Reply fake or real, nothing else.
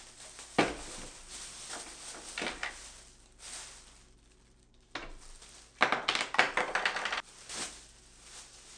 real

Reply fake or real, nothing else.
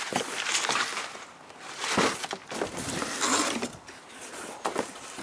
real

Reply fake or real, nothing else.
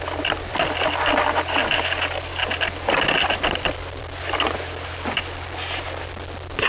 real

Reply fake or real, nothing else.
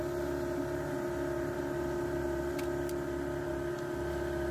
real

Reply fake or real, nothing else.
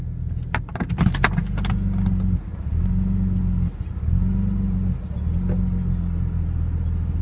real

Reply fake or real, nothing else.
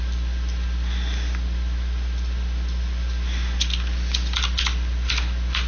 real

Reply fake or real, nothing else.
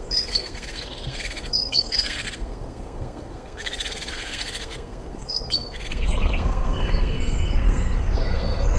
fake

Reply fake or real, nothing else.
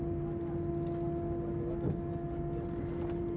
real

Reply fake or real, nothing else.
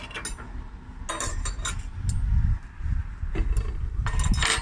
real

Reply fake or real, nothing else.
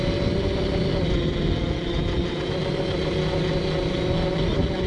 real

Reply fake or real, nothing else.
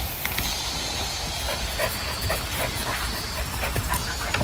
real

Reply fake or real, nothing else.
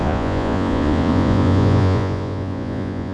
fake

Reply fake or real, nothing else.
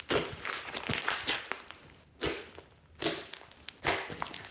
real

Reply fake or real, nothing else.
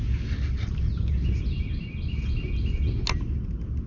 real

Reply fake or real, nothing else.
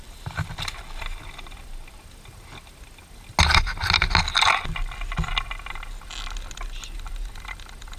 real